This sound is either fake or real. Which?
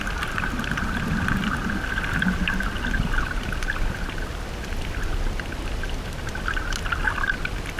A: real